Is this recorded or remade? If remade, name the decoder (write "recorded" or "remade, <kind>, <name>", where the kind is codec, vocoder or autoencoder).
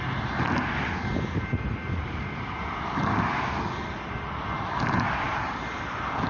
recorded